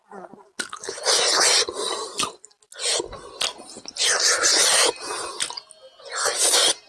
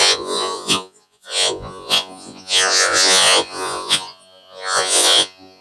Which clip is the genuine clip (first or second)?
first